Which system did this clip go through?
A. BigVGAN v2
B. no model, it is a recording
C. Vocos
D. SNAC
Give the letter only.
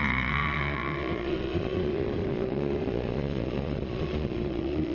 C